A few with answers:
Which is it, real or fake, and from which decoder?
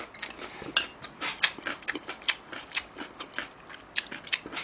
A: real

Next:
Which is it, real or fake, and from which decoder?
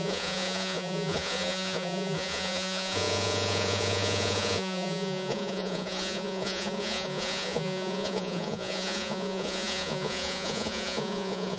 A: fake, vocoder, Vocos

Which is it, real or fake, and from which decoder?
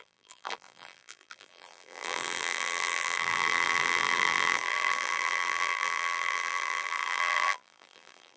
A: fake, vocoder, BigVGAN v2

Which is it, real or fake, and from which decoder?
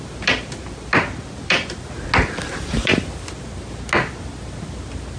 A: real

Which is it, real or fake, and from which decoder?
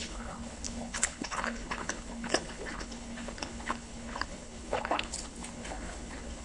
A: fake, codec, HILCodec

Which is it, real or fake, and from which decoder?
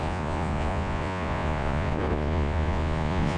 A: fake, vocoder, Vocos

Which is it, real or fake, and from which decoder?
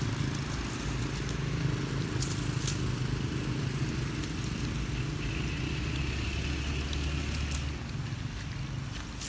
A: real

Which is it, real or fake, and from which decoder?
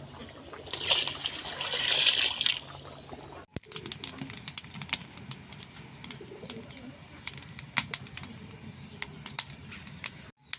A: real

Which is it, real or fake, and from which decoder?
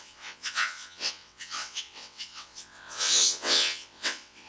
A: fake, vocoder, WaveNeXt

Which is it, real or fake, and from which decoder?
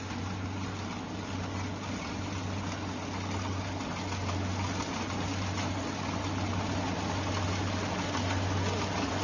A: real